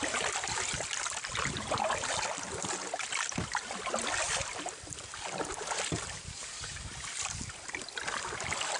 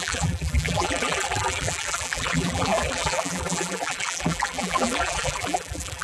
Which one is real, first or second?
first